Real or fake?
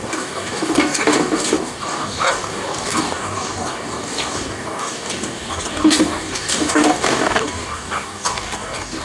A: fake